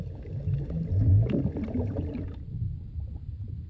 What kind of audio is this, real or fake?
real